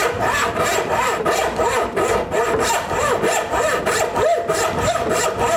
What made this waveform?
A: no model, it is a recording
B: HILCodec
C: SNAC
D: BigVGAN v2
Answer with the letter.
D